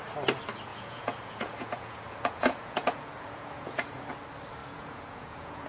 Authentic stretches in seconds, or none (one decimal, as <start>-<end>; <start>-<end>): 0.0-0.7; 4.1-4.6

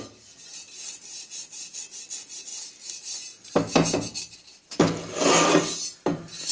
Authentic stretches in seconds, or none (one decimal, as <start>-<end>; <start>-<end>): 0.0-6.5

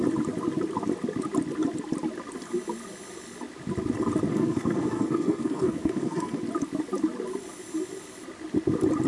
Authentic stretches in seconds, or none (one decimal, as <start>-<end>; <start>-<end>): 0.0-4.3; 6.4-9.1

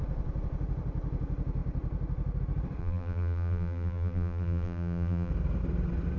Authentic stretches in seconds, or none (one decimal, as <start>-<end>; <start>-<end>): 0.0-2.8; 5.3-6.2

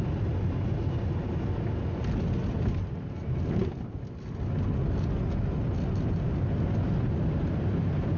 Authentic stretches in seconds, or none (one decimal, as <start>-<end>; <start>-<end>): 0.0-8.2

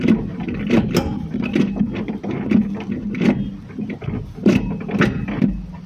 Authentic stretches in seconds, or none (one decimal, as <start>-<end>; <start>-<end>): 0.0-5.9